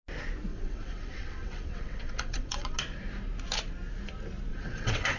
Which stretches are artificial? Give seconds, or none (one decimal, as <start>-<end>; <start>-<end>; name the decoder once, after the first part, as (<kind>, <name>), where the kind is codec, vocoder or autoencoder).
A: 0.5-2.8 (vocoder, WaveNeXt); 4.5-5.2